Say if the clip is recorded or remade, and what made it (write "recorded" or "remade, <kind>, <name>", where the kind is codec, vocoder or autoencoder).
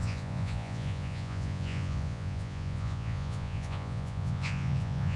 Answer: remade, vocoder, Vocos